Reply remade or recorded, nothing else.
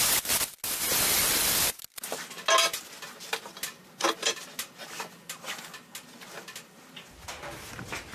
recorded